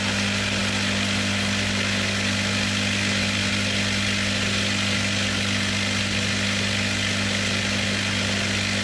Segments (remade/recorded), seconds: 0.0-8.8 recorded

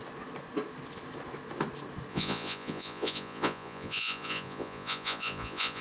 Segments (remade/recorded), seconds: 0.0-2.1 recorded; 2.1-5.8 remade

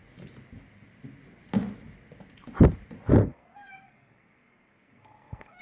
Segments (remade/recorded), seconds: 0.0-3.2 recorded; 3.2-5.6 remade

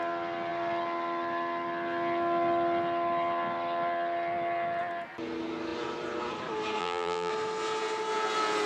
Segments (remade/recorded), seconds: 0.0-6.8 recorded; 6.8-7.3 remade; 7.3-8.7 recorded

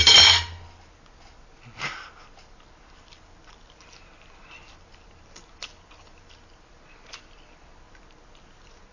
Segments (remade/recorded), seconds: 0.0-8.9 recorded

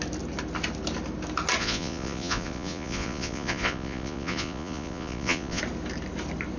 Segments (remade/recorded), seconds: 0.0-1.6 recorded; 1.6-5.6 remade; 5.6-6.6 recorded

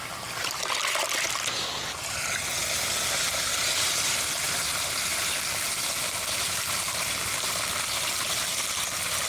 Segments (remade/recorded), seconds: 0.0-3.5 recorded; 3.5-4.2 remade; 4.2-5.1 recorded; 5.1-7.2 remade; 7.2-9.3 recorded

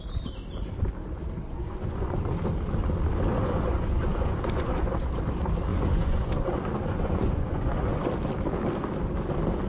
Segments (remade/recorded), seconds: 0.0-1.4 recorded; 1.4-2.2 remade; 2.2-3.3 recorded; 3.3-5.1 remade; 5.1-5.7 recorded; 5.7-8.1 remade; 8.1-9.7 recorded